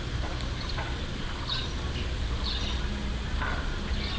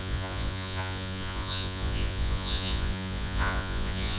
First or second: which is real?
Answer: first